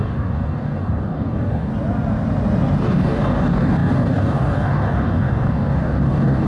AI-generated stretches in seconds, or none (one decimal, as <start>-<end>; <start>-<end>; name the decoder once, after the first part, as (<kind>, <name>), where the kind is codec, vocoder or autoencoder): 0.0-1.7 (codec, DAC); 2.8-6.5